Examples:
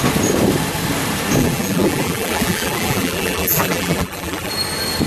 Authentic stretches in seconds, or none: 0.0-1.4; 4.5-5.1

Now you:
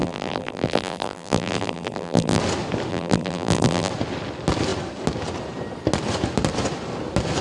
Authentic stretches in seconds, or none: 2.4-2.9; 3.9-7.4

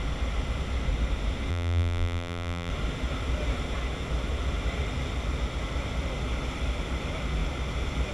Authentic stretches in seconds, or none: 0.0-1.5; 2.7-8.1

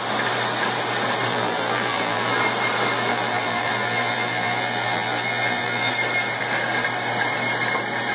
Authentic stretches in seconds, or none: 0.0-1.3; 2.4-3.1; 5.9-8.1

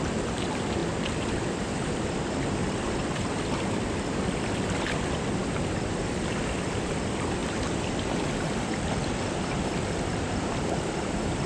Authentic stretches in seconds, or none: 5.4-6.1; 7.4-10.0

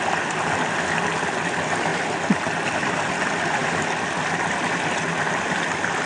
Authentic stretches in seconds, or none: 0.0-6.1

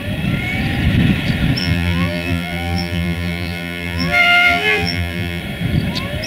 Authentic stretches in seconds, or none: 0.0-1.6; 5.4-6.3

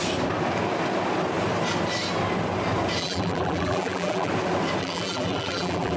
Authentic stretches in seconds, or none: 0.0-3.0; 4.3-4.8